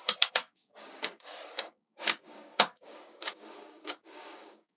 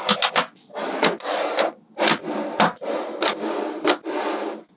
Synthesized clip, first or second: first